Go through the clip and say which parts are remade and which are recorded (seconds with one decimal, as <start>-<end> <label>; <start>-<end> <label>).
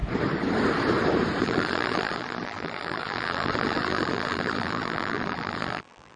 0.0-1.4 recorded; 1.4-6.2 remade